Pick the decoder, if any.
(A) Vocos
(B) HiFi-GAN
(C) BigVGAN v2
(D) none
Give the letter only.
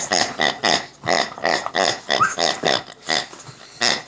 D